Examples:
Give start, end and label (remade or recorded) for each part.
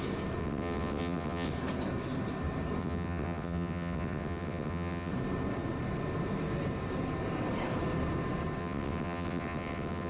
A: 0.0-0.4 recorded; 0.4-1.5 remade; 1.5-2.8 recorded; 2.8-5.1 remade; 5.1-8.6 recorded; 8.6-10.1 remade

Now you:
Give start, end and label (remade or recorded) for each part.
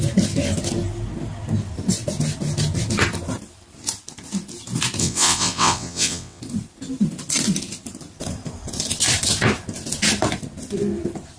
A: 0.0-5.0 recorded; 5.0-6.4 remade; 6.4-11.4 recorded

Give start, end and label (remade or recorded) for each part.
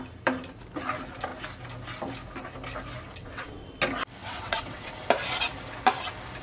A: 0.0-3.2 recorded; 3.2-3.7 remade; 3.7-4.2 recorded; 4.2-4.9 remade; 4.9-6.4 recorded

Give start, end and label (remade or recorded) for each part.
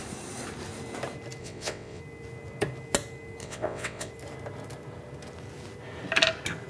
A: 0.0-1.4 recorded; 1.4-2.0 remade; 2.0-3.4 recorded; 3.4-4.1 remade; 4.1-6.7 recorded